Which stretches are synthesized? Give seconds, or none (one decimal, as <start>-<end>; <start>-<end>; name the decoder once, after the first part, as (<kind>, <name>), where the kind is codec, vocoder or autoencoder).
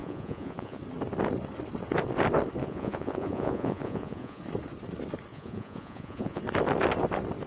0.0-0.8 (vocoder, Vocos); 2.6-4.4; 5.3-6.4